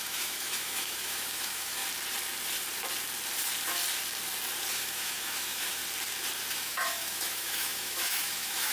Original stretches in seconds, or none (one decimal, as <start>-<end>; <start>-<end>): 1.8-4.7; 5.8-6.5